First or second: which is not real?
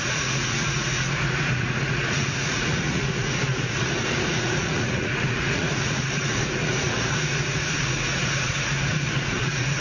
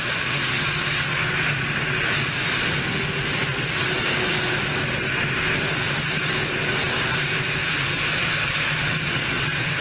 first